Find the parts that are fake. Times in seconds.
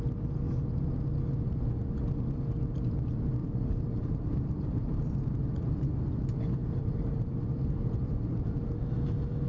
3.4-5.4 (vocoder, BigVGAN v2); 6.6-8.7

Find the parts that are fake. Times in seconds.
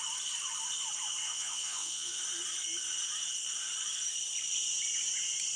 1.2-2.2 (vocoder, WaveNeXt)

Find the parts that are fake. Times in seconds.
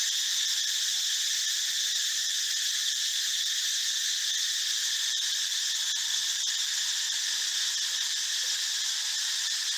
2.2-4.6 (vocoder, BigVGAN v2)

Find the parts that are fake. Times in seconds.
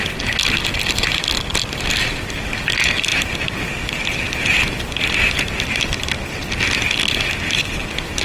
none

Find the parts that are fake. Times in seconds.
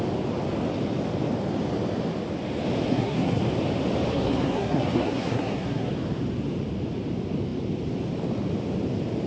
2.9-3.4 (codec, SNAC); 4.1-5.9